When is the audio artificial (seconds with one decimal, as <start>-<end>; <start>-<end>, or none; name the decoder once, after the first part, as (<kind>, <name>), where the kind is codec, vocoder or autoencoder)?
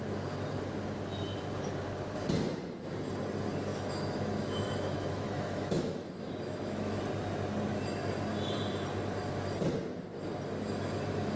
3.7-7.0 (autoencoder, DAC-VAE)